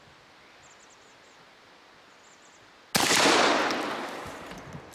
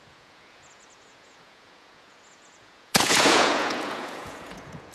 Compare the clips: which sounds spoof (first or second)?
second